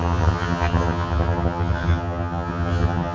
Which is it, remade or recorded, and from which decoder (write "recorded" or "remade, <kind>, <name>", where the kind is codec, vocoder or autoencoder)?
remade, vocoder, HiFi-GAN